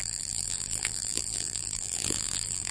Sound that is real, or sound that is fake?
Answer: fake